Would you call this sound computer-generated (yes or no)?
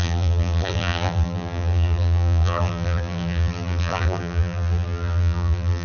yes